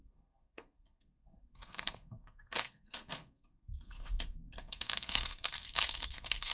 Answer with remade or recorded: remade